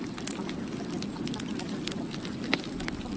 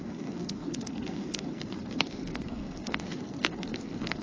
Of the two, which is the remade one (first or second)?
second